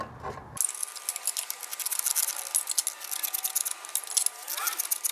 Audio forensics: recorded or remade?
recorded